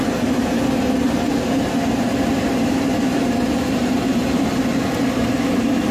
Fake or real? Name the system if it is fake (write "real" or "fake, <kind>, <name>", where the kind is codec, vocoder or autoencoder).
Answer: fake, vocoder, BigVGAN v2